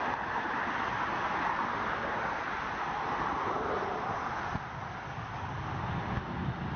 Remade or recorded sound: recorded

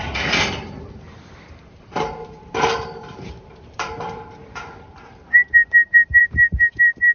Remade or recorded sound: remade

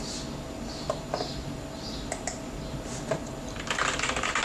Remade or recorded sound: recorded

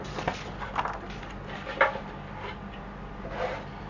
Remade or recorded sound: recorded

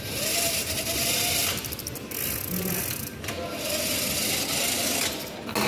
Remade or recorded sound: recorded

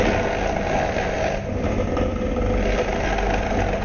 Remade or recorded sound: recorded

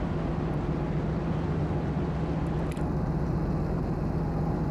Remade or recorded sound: recorded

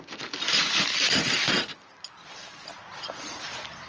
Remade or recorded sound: remade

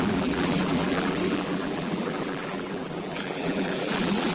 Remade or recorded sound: remade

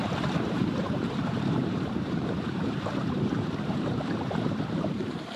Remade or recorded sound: remade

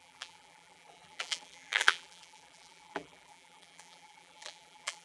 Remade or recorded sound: remade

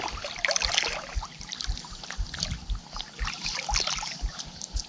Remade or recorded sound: recorded